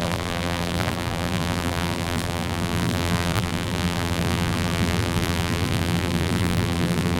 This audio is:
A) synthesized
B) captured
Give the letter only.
A